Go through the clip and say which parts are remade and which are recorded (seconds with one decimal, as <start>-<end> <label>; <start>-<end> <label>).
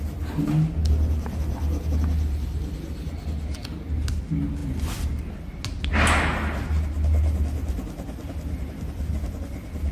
0.0-9.9 recorded